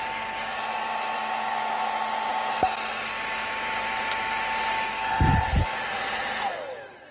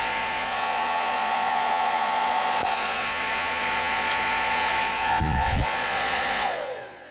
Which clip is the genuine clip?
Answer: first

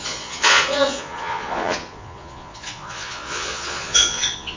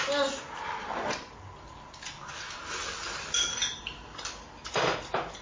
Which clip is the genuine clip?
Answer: second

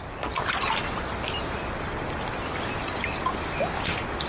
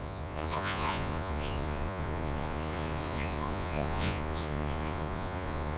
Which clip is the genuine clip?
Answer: first